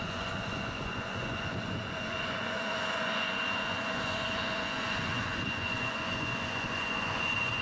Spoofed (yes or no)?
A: yes